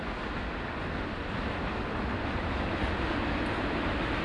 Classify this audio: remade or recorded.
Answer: recorded